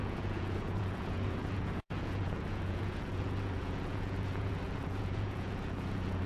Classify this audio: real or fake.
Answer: fake